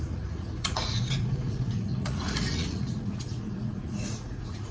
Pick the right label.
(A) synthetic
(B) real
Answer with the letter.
A